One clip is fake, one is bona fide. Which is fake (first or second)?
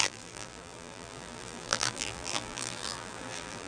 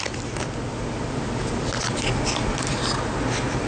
first